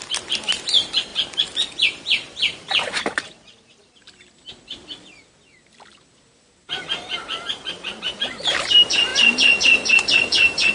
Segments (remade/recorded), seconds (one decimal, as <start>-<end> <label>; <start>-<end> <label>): 0.0-2.6 recorded; 2.6-3.7 remade; 3.7-7.2 recorded; 7.2-8.6 remade; 8.6-10.7 recorded